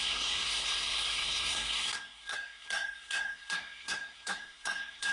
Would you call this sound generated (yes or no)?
yes